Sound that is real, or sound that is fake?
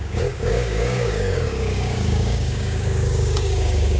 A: fake